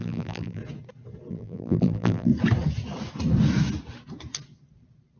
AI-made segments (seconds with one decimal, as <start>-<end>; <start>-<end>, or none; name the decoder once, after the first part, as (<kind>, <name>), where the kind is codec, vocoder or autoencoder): 0.0-0.6 (vocoder, BigVGAN v2); 1.3-2.3